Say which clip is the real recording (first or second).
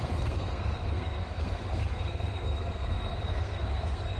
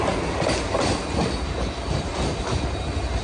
second